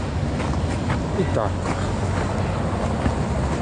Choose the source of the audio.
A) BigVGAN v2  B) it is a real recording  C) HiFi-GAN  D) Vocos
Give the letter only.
B